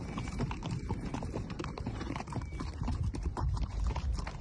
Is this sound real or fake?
fake